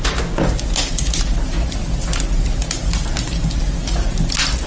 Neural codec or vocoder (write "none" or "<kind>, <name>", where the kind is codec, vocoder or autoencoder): none